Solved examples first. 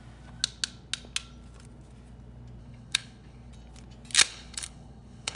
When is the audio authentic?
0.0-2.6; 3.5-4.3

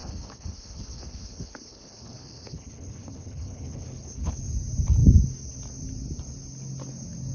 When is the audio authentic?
4.4-7.3